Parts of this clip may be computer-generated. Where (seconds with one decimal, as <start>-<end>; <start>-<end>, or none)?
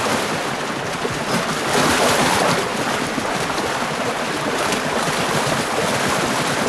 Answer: none